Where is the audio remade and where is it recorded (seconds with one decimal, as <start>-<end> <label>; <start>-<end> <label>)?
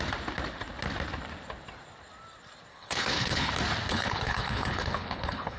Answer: 0.0-2.7 recorded; 2.7-3.5 remade; 3.5-3.9 recorded; 3.9-5.6 remade